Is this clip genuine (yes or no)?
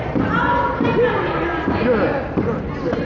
yes